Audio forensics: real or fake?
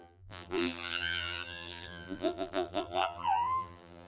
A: fake